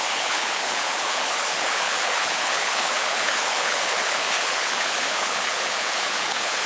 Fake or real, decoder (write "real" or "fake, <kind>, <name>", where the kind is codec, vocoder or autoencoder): fake, codec, HILCodec